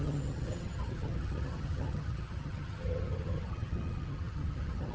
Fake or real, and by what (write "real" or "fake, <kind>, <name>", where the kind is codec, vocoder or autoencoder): fake, vocoder, HiFi-GAN